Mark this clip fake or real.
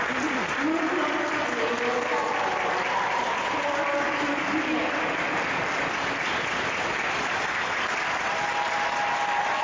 real